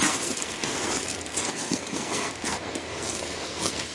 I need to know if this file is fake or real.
fake